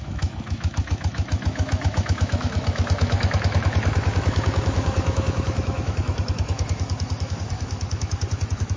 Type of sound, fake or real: fake